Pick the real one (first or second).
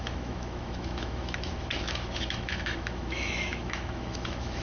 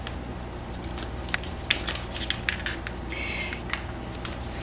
second